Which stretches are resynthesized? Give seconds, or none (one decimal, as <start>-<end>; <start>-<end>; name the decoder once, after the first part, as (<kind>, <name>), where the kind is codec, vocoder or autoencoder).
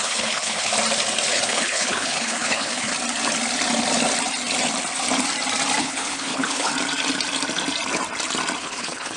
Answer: 0.0-0.7 (codec, HILCodec); 1.3-2.9; 5.8-6.7; 8.6-9.2